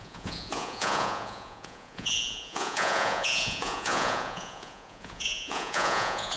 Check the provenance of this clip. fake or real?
fake